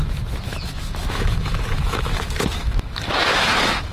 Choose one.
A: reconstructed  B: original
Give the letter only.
A